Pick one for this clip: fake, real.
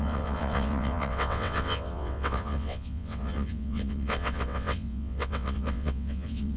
fake